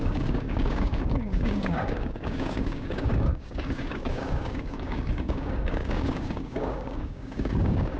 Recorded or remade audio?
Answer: remade